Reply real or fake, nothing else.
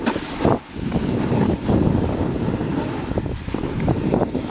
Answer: real